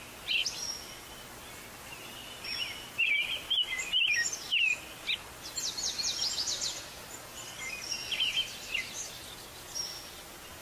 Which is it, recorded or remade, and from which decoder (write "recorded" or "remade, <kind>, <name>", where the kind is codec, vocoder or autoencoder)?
recorded